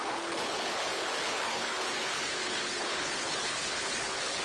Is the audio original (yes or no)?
no